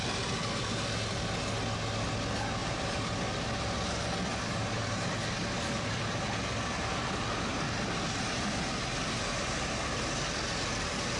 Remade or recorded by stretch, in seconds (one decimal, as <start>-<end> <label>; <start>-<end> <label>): 0.0-2.6 recorded; 2.6-3.2 remade; 3.2-4.3 recorded; 4.3-5.1 remade; 5.1-11.2 recorded